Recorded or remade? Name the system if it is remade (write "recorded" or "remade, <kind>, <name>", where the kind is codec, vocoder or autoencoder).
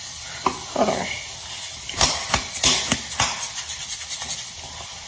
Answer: recorded